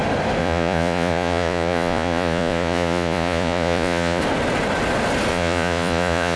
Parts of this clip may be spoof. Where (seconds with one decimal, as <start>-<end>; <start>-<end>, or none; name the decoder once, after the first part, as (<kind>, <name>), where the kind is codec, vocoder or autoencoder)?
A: 0.4-4.2 (vocoder, Vocos); 5.3-6.4